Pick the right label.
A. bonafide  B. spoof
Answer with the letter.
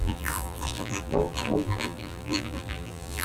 B